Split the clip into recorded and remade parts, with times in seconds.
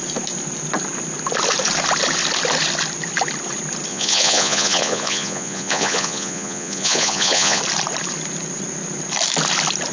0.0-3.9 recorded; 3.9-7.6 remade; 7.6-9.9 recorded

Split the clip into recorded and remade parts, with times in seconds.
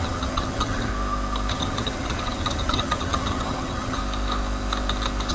0.0-0.9 remade; 0.9-1.5 recorded; 1.5-4.0 remade; 4.0-5.3 recorded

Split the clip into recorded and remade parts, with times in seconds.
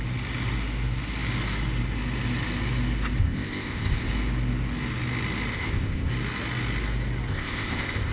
0.0-3.2 recorded; 3.2-4.1 remade; 4.1-5.5 recorded; 5.5-6.1 remade; 6.1-7.3 recorded; 7.3-8.1 remade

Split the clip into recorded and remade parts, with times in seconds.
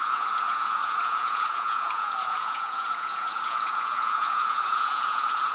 0.0-5.5 remade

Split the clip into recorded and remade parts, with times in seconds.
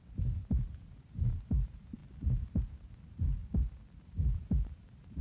0.0-2.0 remade; 2.0-2.6 recorded; 2.6-3.4 remade; 3.4-4.0 recorded; 4.0-5.2 remade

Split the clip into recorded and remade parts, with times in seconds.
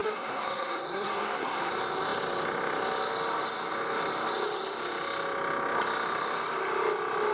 0.0-1.7 remade; 1.7-7.3 recorded